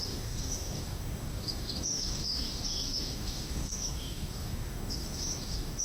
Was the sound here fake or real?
fake